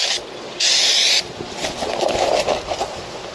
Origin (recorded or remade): recorded